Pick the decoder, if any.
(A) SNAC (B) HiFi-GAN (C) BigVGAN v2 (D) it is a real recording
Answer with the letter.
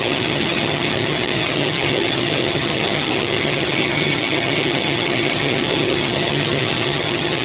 B